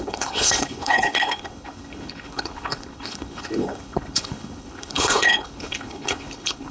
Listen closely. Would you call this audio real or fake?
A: fake